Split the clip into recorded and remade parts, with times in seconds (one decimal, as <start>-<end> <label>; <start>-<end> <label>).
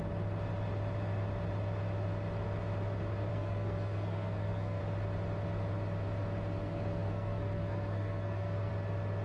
0.0-3.3 recorded; 3.3-4.8 remade; 4.8-6.6 recorded; 6.6-8.7 remade; 8.7-9.2 recorded